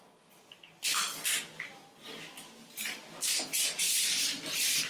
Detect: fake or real real